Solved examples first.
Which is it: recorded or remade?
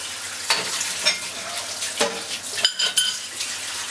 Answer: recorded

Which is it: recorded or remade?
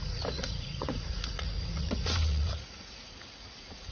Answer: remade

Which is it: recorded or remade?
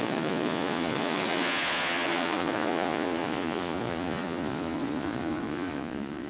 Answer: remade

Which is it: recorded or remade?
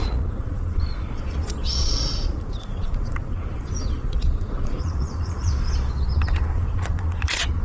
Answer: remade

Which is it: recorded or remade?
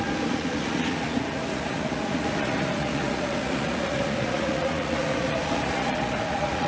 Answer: remade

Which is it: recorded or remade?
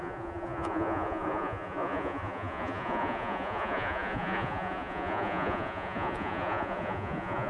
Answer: remade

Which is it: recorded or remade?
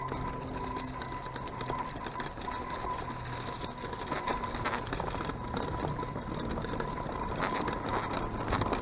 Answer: recorded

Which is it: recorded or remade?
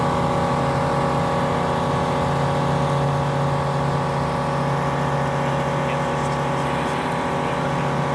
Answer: recorded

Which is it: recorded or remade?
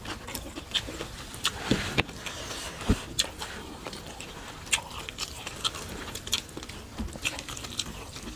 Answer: recorded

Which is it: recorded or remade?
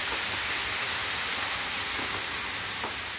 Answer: recorded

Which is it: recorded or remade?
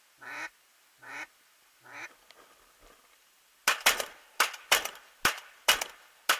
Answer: recorded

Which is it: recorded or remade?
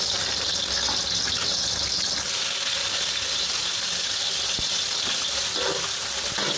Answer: recorded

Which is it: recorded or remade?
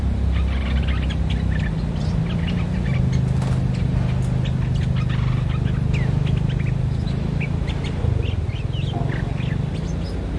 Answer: recorded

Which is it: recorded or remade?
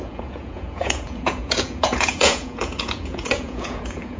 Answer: remade